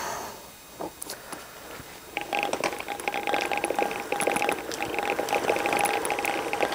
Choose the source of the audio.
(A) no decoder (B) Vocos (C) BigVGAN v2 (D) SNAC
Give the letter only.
A